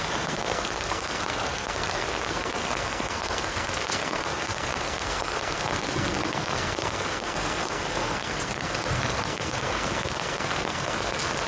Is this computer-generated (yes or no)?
yes